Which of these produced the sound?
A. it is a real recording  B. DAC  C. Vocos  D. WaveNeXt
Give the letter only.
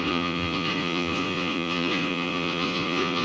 C